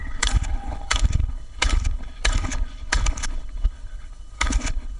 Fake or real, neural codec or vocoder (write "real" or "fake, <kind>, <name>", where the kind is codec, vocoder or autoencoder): fake, codec, HILCodec